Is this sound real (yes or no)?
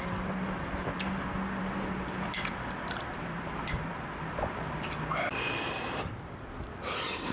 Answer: no